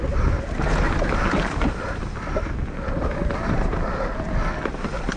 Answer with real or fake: real